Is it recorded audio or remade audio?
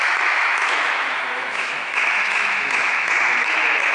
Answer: remade